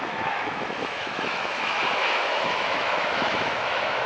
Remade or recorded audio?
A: remade